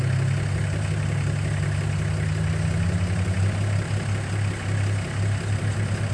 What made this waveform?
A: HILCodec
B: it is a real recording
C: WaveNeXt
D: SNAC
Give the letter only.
B